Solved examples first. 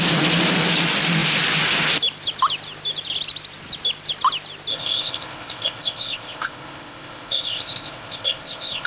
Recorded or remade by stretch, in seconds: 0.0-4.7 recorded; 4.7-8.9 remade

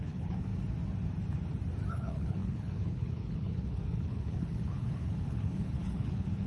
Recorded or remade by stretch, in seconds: 0.0-0.5 remade; 0.5-1.9 recorded; 1.9-6.5 remade